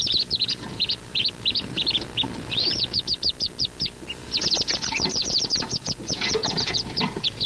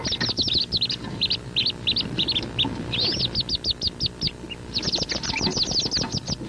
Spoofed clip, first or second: first